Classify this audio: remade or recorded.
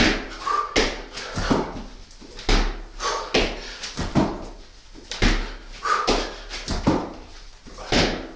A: recorded